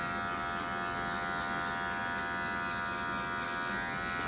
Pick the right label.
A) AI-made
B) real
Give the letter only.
B